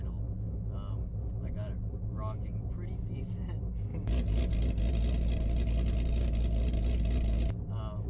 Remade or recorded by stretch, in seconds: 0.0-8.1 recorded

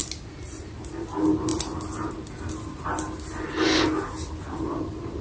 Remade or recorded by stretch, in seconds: 0.0-5.2 recorded

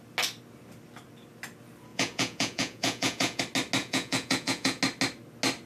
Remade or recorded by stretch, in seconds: 0.0-1.9 recorded; 1.9-3.4 remade; 3.4-3.8 recorded; 3.8-4.8 remade; 4.8-5.7 recorded

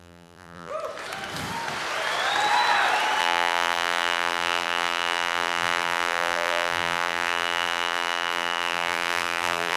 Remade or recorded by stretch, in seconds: 0.0-0.7 remade; 0.7-3.2 recorded; 3.2-9.8 remade

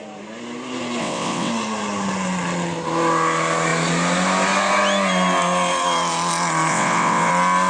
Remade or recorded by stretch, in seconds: 0.0-1.0 recorded; 1.0-1.5 remade; 1.5-6.7 recorded; 6.7-7.3 remade; 7.3-7.7 recorded

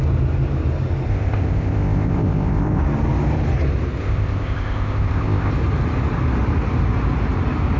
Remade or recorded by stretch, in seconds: 0.0-1.1 recorded; 1.1-2.8 remade; 2.8-4.0 recorded; 4.0-5.5 remade; 5.5-7.8 recorded